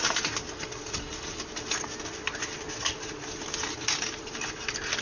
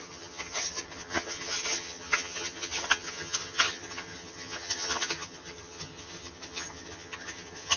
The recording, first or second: first